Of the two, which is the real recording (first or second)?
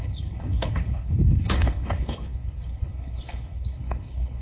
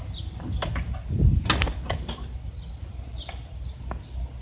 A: second